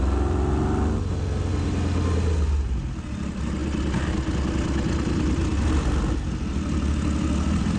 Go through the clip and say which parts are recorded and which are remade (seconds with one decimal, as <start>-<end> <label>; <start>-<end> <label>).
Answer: 0.0-7.8 recorded